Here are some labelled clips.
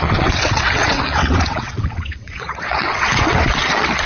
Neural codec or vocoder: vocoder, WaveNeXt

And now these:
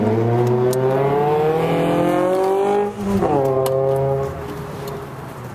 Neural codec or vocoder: none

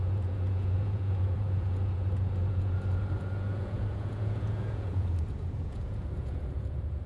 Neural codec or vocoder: vocoder, Vocos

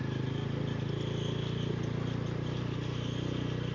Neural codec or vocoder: none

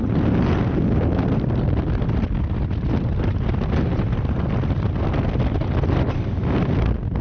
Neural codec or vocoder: none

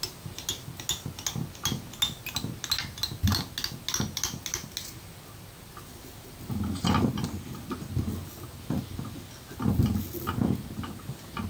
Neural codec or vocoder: none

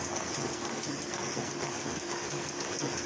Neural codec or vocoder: codec, SNAC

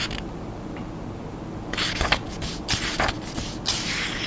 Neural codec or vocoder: none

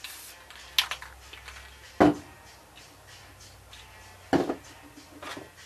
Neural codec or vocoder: none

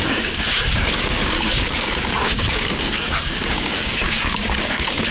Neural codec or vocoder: codec, DAC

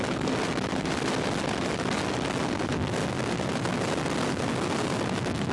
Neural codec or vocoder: none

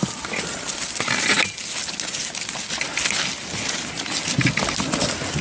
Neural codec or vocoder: none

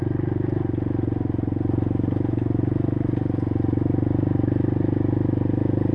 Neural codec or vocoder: none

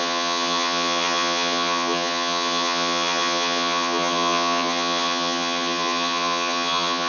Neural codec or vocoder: vocoder, HiFi-GAN